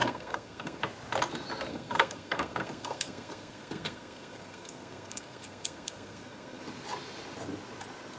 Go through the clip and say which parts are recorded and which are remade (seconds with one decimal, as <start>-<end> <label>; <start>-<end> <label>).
0.0-0.8 remade; 0.8-1.7 recorded; 1.7-6.6 remade; 6.6-8.2 recorded